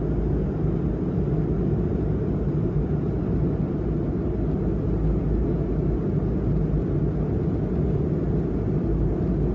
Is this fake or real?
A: real